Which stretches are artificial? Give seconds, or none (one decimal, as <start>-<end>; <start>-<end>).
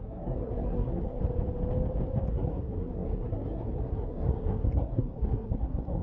0.0-1.2; 2.3-6.0